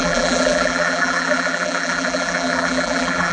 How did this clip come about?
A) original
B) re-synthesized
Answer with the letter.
B